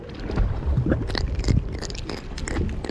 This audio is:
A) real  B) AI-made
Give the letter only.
A